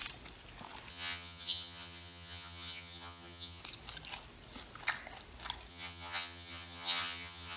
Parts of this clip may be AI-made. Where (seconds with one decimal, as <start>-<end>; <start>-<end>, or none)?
0.9-3.6; 5.7-7.6